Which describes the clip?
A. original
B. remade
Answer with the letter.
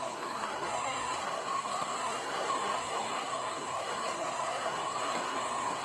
B